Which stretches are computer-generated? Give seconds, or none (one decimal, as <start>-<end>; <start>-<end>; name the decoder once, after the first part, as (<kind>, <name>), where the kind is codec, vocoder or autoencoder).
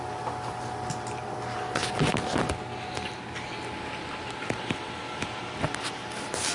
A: none